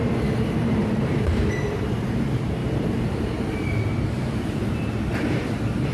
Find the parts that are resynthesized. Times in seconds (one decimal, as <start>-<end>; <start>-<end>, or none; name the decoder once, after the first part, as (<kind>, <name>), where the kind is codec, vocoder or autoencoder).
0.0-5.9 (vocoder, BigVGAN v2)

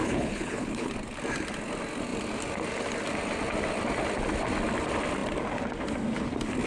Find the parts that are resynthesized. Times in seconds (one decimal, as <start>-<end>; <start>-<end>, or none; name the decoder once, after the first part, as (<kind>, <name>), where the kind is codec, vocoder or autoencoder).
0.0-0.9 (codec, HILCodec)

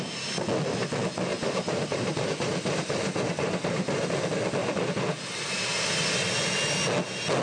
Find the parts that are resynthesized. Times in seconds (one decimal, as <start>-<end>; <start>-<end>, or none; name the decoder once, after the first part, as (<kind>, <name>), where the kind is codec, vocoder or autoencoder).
1.3-4.1 (vocoder, BigVGAN v2); 4.6-6.0

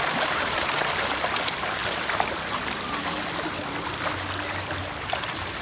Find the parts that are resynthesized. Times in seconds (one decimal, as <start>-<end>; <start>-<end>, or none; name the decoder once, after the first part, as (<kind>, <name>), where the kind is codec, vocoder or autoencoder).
0.0-1.8 (vocoder, BigVGAN v2); 5.1-5.6

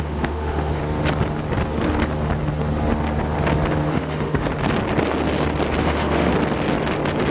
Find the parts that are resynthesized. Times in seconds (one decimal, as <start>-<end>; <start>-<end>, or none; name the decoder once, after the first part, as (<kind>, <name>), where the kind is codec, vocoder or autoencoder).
0.0-0.8 (autoencoder, DAC-VAE); 3.9-4.5; 5.8-6.3

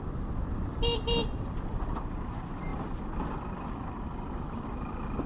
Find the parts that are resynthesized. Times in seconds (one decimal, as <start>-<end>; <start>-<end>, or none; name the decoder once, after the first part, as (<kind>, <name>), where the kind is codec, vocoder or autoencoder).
none

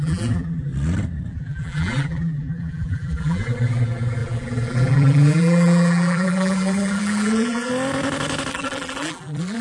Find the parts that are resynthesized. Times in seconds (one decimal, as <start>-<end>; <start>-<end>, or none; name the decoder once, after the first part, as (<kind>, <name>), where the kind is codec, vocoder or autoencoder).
0.0-0.7 (vocoder, BigVGAN v2); 1.3-7.7; 8.5-9.6